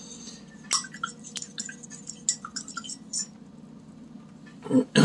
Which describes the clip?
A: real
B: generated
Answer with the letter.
A